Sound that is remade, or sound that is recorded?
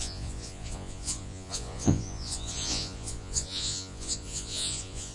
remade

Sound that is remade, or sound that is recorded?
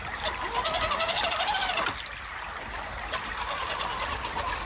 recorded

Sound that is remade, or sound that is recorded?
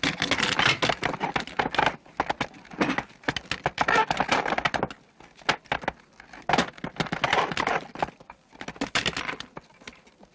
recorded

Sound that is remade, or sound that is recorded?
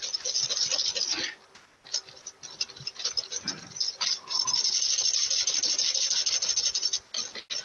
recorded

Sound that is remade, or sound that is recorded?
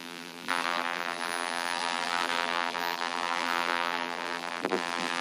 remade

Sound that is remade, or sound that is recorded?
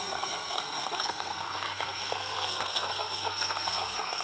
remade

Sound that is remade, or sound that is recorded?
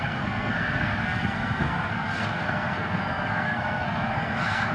remade